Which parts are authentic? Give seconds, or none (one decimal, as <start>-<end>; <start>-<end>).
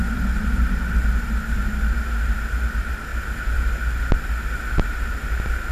1.0-2.7; 3.1-5.7